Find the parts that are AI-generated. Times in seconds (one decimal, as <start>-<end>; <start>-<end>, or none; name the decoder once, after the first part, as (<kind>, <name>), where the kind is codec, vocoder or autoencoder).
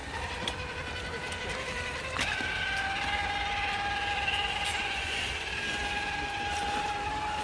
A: 4.7-5.2 (vocoder, Vocos)